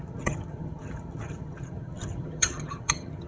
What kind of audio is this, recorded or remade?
remade